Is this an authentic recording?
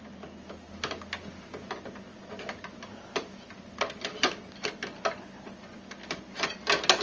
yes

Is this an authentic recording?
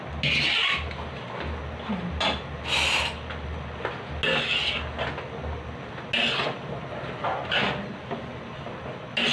yes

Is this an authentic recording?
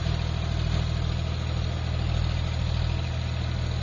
yes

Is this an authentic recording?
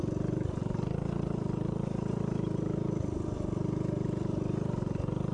yes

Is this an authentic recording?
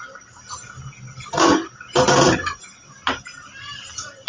no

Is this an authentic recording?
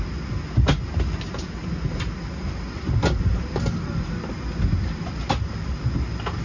yes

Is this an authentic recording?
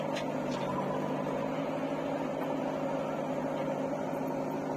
yes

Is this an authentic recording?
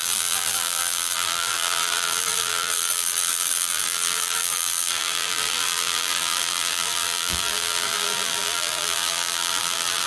no